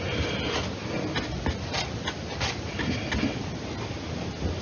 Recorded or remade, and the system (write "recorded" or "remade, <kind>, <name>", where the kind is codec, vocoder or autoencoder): recorded